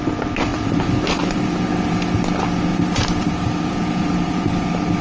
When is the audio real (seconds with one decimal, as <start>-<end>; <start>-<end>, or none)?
0.0-0.5; 1.7-2.7; 4.5-5.0